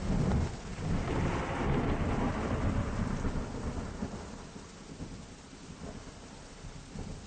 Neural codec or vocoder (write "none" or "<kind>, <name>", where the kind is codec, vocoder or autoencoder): none